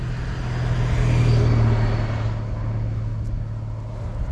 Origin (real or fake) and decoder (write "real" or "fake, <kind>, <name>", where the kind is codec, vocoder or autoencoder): real